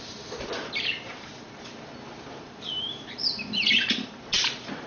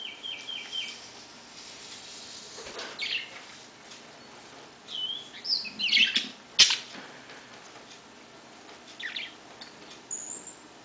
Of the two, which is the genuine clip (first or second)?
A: second